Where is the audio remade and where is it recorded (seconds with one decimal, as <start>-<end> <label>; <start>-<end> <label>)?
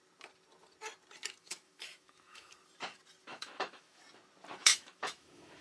0.0-1.4 recorded; 1.4-2.5 remade; 2.5-3.3 recorded; 3.3-4.0 remade; 4.0-4.6 recorded; 4.6-5.6 remade